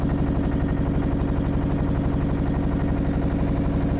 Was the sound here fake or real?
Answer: real